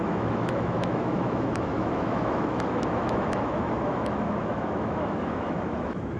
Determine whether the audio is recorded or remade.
remade